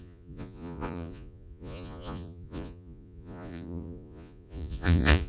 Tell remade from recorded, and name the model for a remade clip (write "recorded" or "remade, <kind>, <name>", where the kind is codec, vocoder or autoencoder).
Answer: remade, vocoder, Vocos